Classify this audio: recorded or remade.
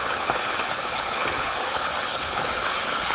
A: remade